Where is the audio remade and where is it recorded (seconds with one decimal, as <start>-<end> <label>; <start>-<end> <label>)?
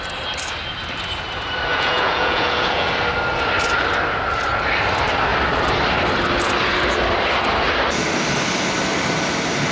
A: 0.0-1.7 recorded; 1.7-2.9 remade; 2.9-9.7 recorded